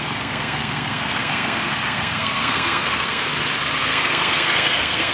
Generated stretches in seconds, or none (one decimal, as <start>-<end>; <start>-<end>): 0.0-3.3; 3.8-5.1